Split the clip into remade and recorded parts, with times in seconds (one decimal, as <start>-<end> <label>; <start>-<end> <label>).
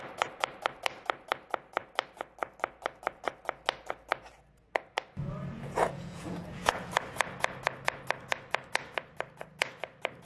0.0-5.5 recorded; 5.5-6.9 remade; 6.9-10.3 recorded